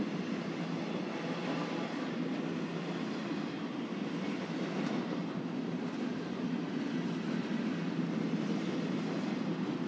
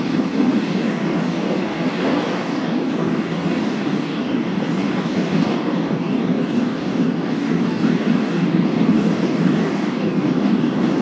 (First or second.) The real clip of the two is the first